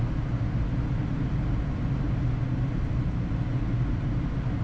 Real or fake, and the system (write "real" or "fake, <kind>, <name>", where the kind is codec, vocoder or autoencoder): real